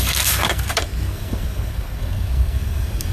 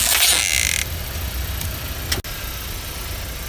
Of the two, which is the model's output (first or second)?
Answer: first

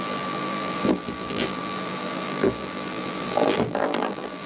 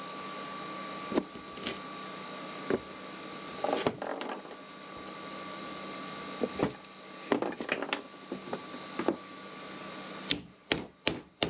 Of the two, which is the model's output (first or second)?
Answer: first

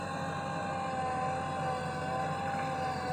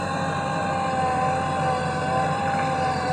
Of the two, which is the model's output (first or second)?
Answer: second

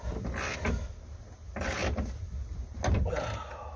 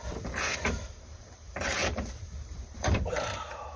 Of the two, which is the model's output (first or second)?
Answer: second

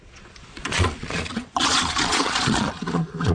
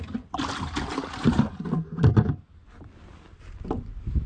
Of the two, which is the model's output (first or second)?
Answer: first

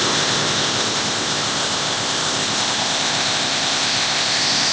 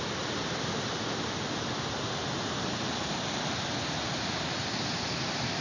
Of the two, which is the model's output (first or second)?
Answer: first